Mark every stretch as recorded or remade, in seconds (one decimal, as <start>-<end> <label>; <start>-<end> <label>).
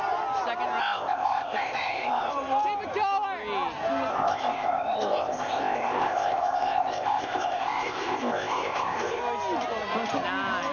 0.0-0.8 recorded; 0.8-2.3 remade; 2.3-4.1 recorded; 4.1-9.2 remade; 9.2-10.7 recorded